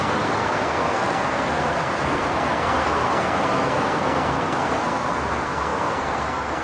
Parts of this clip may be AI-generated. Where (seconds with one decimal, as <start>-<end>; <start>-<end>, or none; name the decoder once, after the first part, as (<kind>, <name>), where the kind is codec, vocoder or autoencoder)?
0.0-6.6 (codec, SNAC)